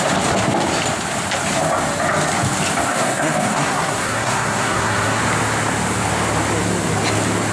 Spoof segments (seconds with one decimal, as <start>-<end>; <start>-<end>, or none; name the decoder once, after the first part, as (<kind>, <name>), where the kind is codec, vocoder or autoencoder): 2.9-5.2 (codec, SNAC)